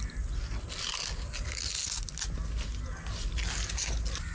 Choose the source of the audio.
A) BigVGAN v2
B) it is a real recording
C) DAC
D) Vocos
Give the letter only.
B